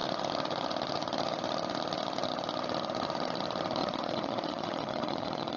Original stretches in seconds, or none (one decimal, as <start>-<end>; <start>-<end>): 0.0-3.8